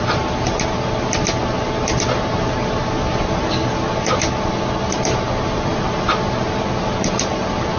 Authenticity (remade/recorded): remade